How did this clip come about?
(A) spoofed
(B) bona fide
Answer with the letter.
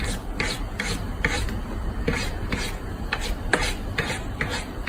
A